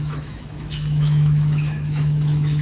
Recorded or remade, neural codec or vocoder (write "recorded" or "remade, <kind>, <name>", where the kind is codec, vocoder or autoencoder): remade, autoencoder, DAC-VAE